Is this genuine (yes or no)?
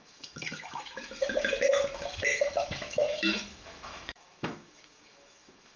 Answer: no